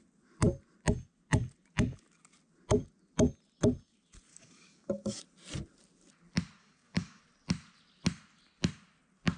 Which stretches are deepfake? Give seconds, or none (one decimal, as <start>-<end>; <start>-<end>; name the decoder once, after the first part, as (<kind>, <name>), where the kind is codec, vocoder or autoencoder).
4.3-5.2 (codec, DAC); 6.6-7.2